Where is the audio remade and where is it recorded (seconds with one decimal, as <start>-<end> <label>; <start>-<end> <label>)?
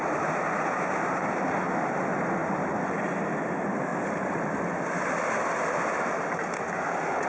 0.0-2.4 recorded; 2.4-3.2 remade; 3.2-3.9 recorded; 3.9-6.0 remade; 6.0-7.3 recorded